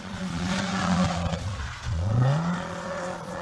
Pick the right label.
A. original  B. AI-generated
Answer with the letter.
B